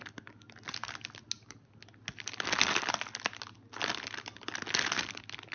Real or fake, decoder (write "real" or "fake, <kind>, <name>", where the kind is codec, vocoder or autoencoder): real